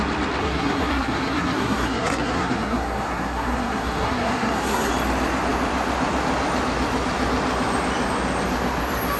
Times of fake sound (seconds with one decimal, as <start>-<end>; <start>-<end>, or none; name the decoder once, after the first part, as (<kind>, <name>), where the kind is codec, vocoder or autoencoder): 0.4-4.9 (codec, SNAC)